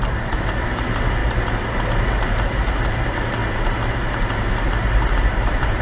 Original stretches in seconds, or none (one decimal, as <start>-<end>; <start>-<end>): 1.2-1.9; 3.4-4.5